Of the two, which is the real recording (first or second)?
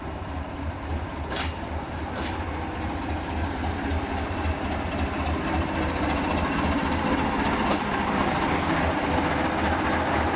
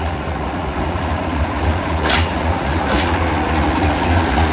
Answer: first